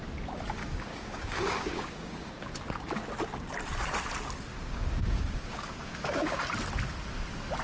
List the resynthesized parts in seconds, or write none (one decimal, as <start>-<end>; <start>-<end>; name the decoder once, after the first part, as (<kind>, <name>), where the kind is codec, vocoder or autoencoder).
0.6-2.5 (codec, DAC); 4.5-6.4